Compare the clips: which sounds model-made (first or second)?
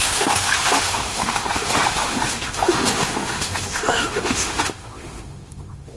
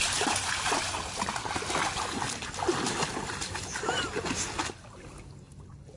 first